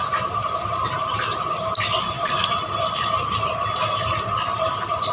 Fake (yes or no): yes